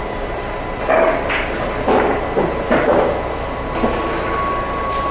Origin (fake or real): real